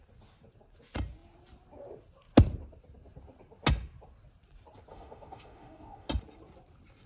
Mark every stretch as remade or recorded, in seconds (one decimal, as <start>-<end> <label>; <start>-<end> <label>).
0.0-4.9 recorded; 4.9-6.1 remade; 6.1-7.1 recorded